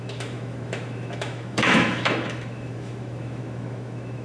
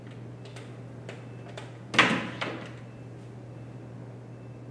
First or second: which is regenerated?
first